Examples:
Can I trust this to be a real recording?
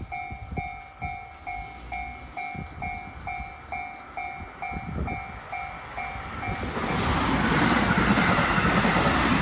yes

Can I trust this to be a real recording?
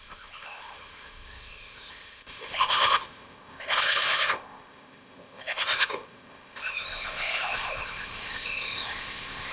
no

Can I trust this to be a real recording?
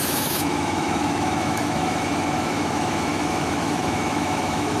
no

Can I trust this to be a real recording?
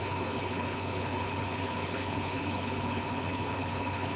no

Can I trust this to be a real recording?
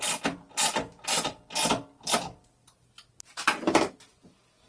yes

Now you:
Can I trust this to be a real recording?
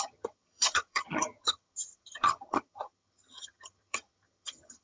no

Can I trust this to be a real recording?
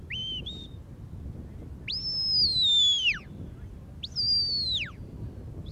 yes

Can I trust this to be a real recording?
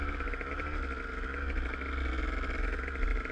yes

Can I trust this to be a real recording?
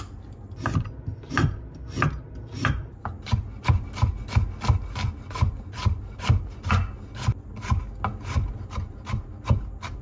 yes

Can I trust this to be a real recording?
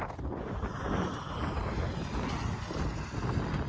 yes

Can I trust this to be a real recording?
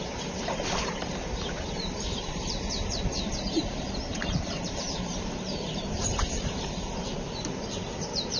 no